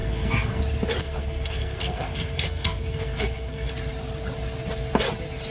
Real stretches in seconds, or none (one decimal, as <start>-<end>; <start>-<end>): 0.6-1.0; 3.7-5.5